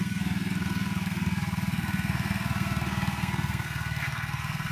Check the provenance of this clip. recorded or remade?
remade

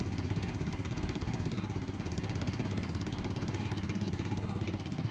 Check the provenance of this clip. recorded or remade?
remade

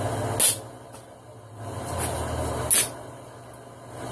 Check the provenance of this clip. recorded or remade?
recorded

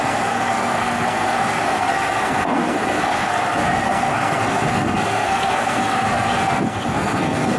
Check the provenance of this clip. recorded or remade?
remade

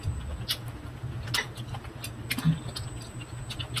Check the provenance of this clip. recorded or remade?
recorded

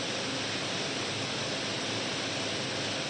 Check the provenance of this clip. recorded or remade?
recorded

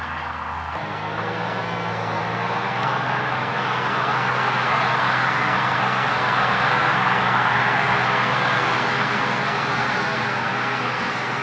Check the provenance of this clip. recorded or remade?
remade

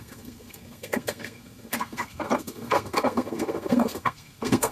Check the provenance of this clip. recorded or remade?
remade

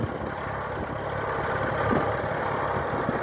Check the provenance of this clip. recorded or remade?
recorded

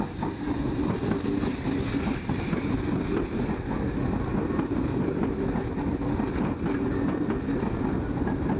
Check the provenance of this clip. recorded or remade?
recorded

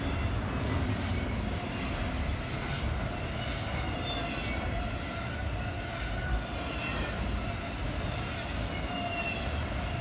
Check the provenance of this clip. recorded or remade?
recorded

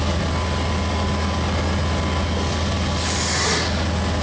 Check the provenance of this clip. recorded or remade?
recorded